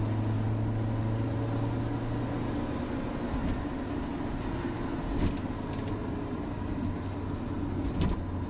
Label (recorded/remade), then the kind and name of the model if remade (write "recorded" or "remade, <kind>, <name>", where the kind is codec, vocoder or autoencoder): recorded